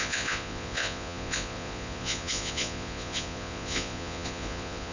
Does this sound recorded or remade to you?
remade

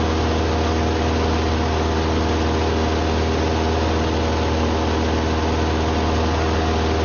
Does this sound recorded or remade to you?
recorded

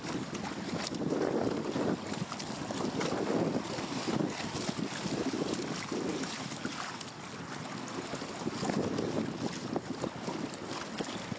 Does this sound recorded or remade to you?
recorded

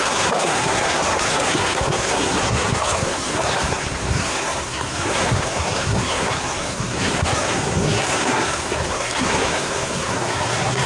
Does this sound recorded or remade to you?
remade